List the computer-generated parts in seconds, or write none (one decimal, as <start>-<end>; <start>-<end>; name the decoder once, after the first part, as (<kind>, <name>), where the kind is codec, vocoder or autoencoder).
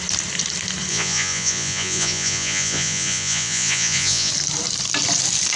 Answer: 0.9-4.3 (vocoder, Vocos)